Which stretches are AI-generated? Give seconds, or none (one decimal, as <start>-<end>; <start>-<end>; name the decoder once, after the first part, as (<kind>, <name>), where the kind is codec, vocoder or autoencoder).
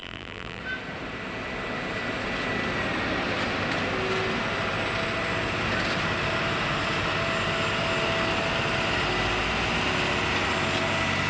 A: 0.0-0.6 (vocoder, BigVGAN v2)